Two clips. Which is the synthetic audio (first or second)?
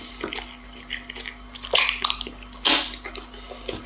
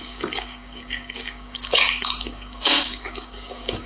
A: second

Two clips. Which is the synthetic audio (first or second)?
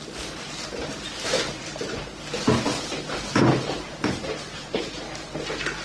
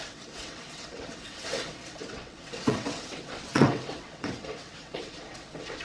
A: second